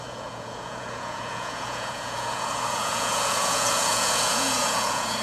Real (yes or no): no